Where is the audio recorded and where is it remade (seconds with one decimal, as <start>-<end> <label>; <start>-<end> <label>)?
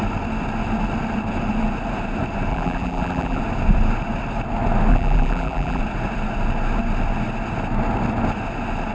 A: 0.0-2.5 recorded; 2.5-3.4 remade; 3.4-4.9 recorded; 4.9-5.8 remade; 5.8-8.9 recorded